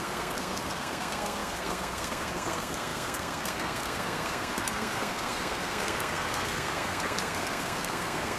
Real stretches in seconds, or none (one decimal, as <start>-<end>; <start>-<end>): none